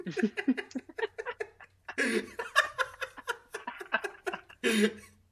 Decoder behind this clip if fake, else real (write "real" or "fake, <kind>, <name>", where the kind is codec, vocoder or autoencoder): real